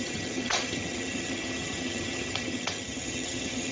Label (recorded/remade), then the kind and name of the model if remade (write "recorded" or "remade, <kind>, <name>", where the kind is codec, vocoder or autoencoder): remade, vocoder, HiFi-GAN